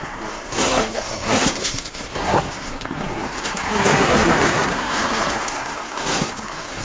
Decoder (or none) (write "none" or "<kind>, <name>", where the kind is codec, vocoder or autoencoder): codec, SNAC